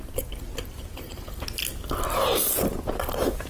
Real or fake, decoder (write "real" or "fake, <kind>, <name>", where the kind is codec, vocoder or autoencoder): real